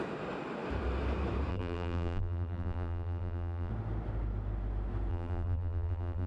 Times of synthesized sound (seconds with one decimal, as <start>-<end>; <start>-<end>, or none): 1.5-3.7; 5.1-6.3